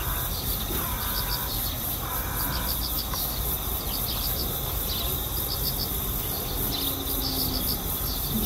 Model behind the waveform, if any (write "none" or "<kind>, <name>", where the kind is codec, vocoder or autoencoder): none